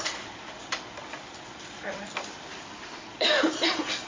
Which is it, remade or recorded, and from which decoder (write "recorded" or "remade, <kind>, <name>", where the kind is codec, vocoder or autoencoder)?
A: remade, vocoder, BigVGAN v2